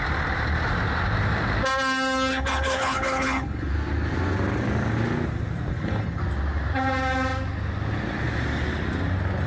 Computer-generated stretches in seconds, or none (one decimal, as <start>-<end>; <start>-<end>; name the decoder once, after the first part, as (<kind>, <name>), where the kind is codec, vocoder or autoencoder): 2.3-3.7 (codec, HILCodec); 5.7-6.2